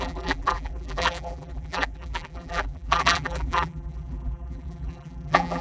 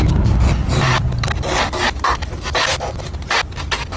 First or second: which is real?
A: second